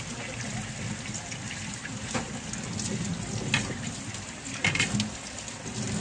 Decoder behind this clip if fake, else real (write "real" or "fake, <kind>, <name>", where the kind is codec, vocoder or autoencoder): real